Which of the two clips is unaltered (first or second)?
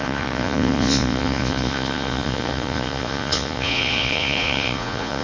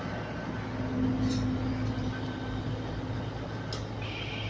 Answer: second